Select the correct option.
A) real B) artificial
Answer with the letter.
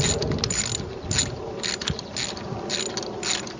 A